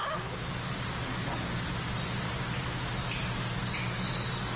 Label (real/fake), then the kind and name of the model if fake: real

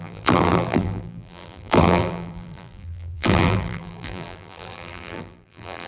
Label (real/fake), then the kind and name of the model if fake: fake, vocoder, BigVGAN v2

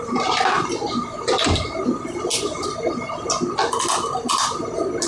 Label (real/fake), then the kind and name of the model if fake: fake, vocoder, BigVGAN v2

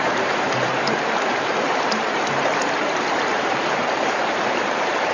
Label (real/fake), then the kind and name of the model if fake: fake, vocoder, BigVGAN v2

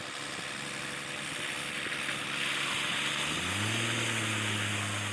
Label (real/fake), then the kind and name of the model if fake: real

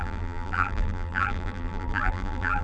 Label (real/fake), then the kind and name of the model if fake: fake, vocoder, BigVGAN v2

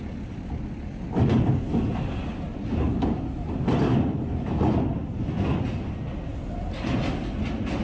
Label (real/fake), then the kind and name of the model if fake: real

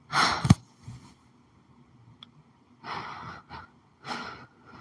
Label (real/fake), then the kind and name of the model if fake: real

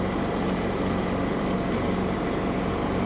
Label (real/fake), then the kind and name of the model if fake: fake, vocoder, BigVGAN v2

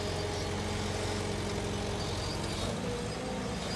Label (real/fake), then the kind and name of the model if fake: real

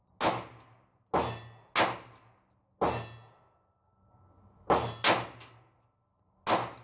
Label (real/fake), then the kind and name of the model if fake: real